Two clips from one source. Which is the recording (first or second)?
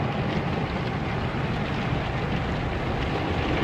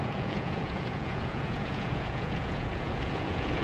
first